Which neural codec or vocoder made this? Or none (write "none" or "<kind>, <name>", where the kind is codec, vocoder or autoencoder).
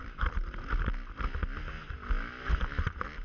none